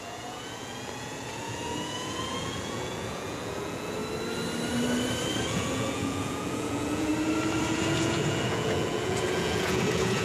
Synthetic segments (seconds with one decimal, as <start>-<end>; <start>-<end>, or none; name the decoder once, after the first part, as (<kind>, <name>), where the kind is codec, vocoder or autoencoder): 0.0-4.0 (vocoder, Vocos); 5.4-7.1; 7.7-10.2